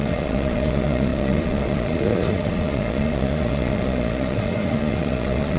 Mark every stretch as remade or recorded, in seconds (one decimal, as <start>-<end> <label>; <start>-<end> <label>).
0.0-5.6 remade